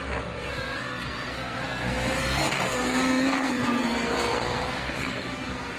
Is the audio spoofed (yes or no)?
yes